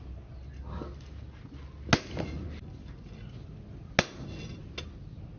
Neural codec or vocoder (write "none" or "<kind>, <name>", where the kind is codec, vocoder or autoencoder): none